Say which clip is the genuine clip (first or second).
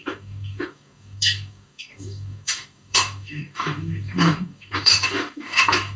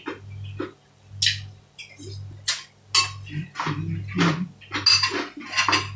second